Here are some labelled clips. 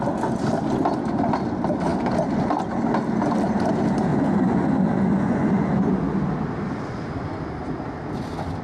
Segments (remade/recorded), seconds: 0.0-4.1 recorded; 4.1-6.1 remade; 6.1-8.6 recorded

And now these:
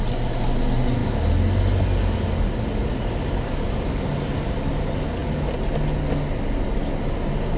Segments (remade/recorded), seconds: 0.0-7.6 recorded

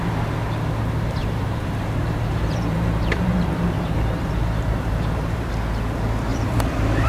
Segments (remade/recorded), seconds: 0.0-1.2 recorded; 1.2-5.5 remade; 5.5-6.3 recorded; 6.3-7.1 remade